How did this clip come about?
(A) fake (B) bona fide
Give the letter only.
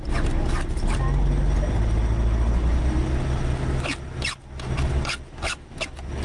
B